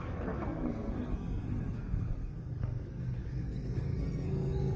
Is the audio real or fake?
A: fake